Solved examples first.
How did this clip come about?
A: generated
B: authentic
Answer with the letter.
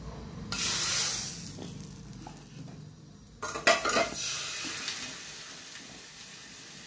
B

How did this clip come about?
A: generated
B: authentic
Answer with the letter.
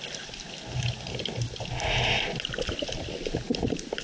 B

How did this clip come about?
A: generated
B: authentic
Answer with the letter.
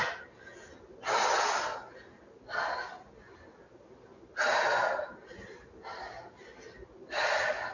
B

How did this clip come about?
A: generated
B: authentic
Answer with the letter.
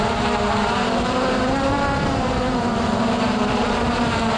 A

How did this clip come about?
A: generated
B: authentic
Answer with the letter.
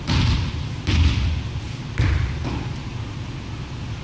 B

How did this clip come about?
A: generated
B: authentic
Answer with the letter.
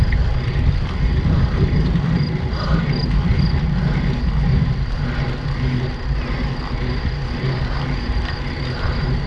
B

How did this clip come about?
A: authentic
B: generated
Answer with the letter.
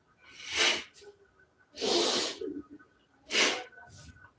A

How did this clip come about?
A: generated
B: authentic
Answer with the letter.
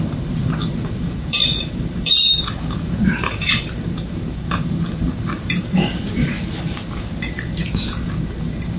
A